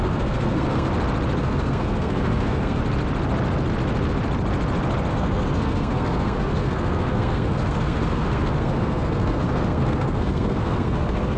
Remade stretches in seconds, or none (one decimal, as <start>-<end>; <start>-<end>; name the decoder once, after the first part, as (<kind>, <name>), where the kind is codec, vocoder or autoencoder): 0.0-0.9 (codec, SNAC); 1.4-2.8; 5.1-11.4

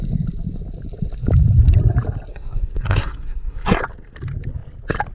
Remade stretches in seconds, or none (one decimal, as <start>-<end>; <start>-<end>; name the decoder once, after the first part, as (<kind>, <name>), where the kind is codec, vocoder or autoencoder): 2.3-3.8 (codec, SNAC)

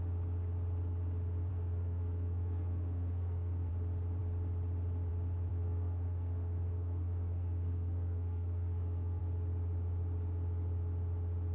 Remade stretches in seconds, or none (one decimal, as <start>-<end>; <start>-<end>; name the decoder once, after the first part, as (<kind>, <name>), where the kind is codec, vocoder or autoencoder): 1.5-3.7 (codec, SNAC); 5.5-9.2

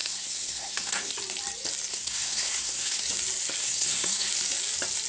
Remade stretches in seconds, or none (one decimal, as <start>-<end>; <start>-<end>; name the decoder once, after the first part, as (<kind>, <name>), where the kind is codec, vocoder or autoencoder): 0.0-1.1 (codec, SNAC); 1.9-3.0; 3.6-4.3

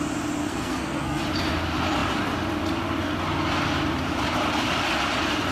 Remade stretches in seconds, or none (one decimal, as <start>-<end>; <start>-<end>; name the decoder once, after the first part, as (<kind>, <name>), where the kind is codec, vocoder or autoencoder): 0.4-1.2 (codec, SNAC)

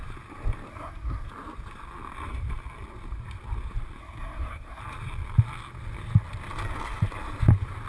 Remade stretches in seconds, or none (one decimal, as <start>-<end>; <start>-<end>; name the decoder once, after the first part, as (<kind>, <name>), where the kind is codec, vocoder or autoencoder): 0.7-1.3 (codec, SNAC); 4.0-4.8

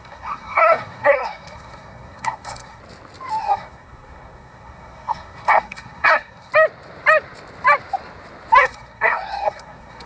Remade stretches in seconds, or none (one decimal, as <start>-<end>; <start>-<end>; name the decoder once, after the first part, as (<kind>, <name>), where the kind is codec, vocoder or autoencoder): 0.0-2.8 (codec, SNAC); 3.4-6.5; 8.6-10.1